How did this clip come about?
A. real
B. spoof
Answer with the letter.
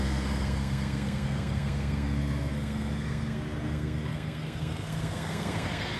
B